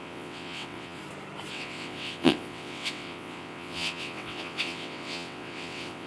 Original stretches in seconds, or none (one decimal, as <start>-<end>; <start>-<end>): 1.0-1.5

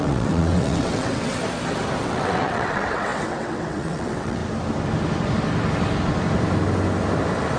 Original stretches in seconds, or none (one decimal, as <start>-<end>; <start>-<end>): 1.4-2.0; 4.4-7.6

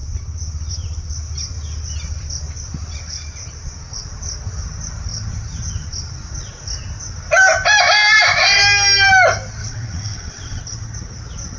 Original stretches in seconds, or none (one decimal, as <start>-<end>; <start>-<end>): 0.0-9.6; 10.6-11.6

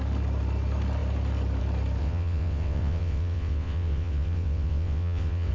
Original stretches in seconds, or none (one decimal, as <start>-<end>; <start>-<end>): 0.0-2.0

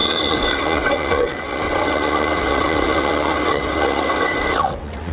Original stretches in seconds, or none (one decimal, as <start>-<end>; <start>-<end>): none

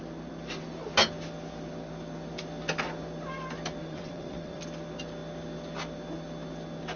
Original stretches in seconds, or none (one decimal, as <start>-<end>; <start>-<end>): 0.0-3.8; 4.6-7.0

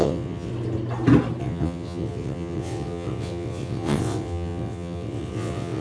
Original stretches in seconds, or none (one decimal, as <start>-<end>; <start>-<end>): 0.5-1.4